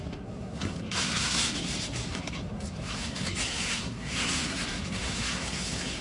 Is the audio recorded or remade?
remade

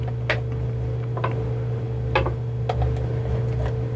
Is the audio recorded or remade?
recorded